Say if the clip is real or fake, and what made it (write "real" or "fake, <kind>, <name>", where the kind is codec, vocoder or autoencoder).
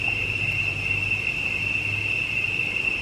real